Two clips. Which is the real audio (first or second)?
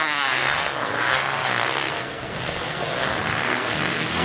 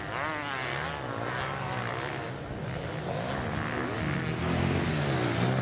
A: second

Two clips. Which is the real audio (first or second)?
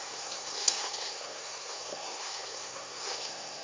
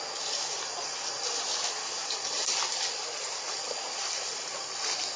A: second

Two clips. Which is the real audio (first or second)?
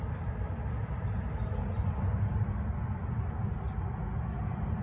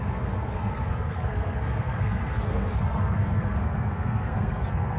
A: first